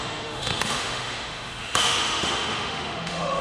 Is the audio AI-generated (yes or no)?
yes